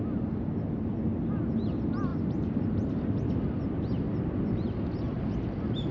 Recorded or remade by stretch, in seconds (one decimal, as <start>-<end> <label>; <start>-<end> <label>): 0.0-5.9 recorded